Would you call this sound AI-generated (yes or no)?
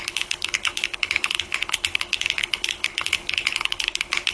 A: yes